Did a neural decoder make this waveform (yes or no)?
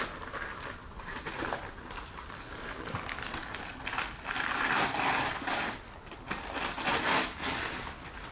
no